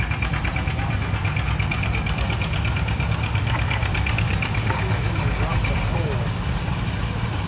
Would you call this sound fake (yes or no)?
no